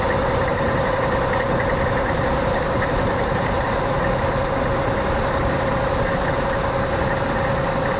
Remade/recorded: recorded